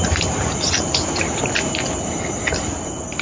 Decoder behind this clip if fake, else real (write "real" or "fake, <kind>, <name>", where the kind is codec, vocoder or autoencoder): real